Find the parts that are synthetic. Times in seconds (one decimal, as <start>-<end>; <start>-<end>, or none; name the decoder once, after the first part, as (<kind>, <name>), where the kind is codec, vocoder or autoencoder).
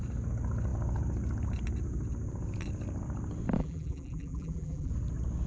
3.6-4.9 (vocoder, BigVGAN v2)